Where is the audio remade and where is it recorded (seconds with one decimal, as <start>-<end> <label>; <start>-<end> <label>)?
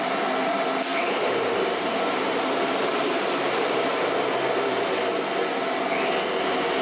0.0-0.9 recorded; 0.9-3.9 remade; 3.9-6.8 recorded